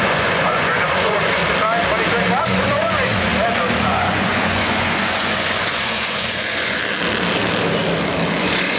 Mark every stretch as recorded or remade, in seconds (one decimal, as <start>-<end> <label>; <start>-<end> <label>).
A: 0.0-1.4 remade; 1.4-2.4 recorded; 2.4-3.3 remade; 3.3-3.9 recorded; 3.9-6.8 remade; 6.8-8.4 recorded; 8.4-8.8 remade